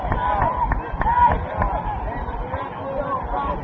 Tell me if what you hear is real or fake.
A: real